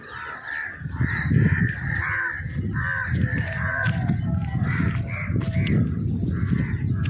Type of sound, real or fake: real